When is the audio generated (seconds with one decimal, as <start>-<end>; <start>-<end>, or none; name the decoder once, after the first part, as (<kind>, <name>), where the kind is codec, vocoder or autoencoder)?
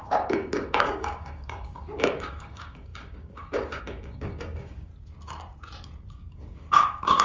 0.0-4.9 (codec, DAC); 6.1-7.2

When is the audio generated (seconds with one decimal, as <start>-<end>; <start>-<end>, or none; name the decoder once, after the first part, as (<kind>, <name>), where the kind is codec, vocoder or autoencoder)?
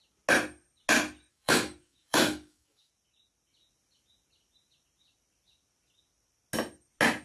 1.3-2.9 (codec, DAC)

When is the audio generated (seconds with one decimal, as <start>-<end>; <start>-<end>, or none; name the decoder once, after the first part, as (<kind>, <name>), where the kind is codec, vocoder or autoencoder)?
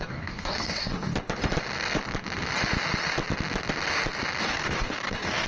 0.0-1.1 (codec, DAC); 4.4-5.5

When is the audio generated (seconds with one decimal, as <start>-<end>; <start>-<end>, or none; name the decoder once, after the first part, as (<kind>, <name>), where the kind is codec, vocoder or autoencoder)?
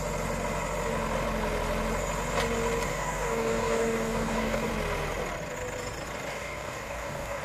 2.9-4.7 (codec, DAC); 6.3-7.4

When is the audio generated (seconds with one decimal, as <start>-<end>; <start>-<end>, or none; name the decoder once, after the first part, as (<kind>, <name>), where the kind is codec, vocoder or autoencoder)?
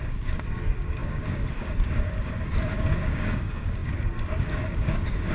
0.0-5.3 (codec, DAC)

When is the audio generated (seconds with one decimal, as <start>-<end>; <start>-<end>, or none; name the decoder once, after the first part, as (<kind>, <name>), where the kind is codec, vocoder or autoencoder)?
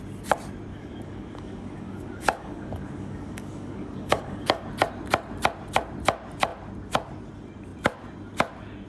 0.7-4.7 (codec, DAC)